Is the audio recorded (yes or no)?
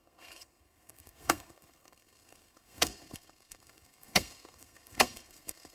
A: no